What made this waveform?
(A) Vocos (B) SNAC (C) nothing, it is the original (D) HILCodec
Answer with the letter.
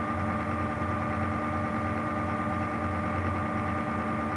C